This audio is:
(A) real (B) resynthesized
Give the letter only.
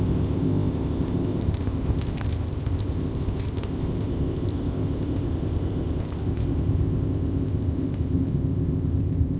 B